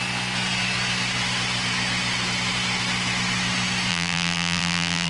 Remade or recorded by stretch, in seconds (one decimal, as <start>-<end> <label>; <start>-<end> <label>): 0.0-3.9 recorded; 3.9-5.1 remade